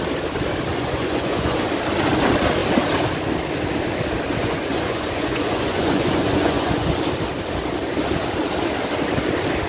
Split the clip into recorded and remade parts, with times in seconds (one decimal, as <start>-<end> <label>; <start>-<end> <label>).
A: 0.0-0.7 recorded; 0.7-1.7 remade; 1.7-4.4 recorded; 4.4-6.9 remade; 6.9-9.7 recorded